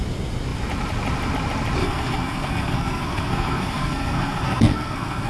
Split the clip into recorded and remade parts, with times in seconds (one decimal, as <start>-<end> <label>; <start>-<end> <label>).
0.0-1.8 recorded; 1.8-5.3 remade

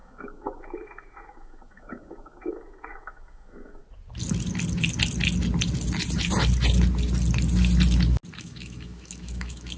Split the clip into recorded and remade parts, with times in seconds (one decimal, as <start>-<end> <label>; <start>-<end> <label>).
0.0-3.8 remade; 3.8-8.4 recorded; 8.4-9.8 remade

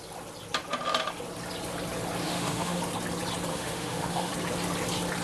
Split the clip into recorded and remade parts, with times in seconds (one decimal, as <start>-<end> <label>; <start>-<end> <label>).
0.0-2.2 recorded; 2.2-2.8 remade; 2.8-3.5 recorded; 3.5-4.3 remade; 4.3-5.2 recorded

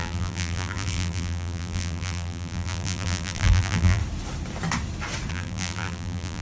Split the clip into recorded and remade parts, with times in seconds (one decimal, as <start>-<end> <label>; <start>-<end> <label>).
0.0-4.0 remade; 4.0-5.3 recorded; 5.3-6.4 remade

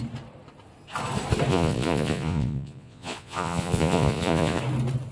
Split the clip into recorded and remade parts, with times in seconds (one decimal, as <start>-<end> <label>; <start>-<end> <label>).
0.0-1.5 recorded; 1.5-4.6 remade; 4.6-5.1 recorded

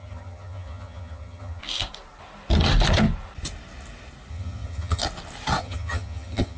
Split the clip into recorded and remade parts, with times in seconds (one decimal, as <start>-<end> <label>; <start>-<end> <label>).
0.0-1.6 remade; 1.6-4.3 recorded; 4.3-5.0 remade; 5.0-5.6 recorded; 5.6-6.6 remade

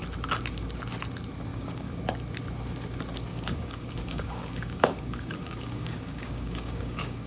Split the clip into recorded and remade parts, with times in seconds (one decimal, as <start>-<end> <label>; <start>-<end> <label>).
0.0-1.5 recorded; 1.5-2.0 remade; 2.0-3.3 recorded; 3.3-7.3 remade